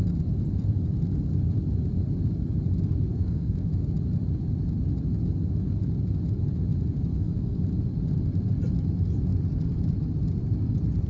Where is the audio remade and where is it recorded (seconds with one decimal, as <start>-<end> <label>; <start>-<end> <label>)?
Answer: 0.0-3.1 recorded; 3.1-3.7 remade; 3.7-7.1 recorded; 7.1-7.6 remade; 7.6-11.1 recorded